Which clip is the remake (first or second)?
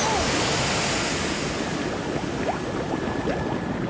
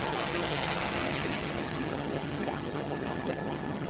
second